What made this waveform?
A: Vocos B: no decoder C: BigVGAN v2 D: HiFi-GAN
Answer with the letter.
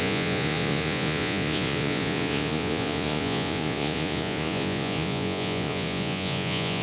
A